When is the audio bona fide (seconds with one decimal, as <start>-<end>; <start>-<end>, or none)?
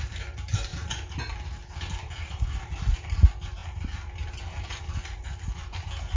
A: 0.0-6.2